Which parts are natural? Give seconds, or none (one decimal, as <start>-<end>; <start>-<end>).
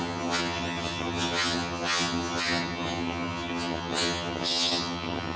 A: none